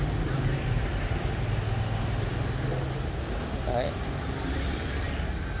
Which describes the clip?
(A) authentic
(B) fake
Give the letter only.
A